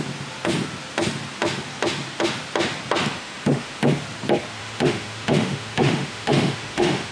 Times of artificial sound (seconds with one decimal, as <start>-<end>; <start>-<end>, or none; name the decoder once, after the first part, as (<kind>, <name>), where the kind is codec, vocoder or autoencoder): 3.1-3.8 (autoencoder, DAC-VAE); 4.6-7.1